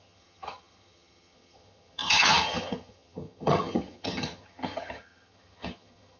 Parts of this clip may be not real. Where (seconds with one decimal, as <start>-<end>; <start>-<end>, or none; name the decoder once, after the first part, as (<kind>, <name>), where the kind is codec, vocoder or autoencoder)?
0.0-6.2 (vocoder, HiFi-GAN)